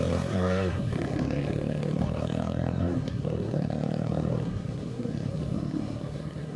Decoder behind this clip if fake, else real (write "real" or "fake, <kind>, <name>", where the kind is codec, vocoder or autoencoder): fake, codec, SNAC